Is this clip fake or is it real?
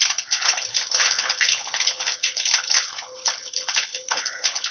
fake